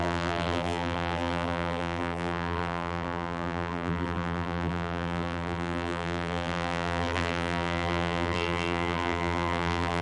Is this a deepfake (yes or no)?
yes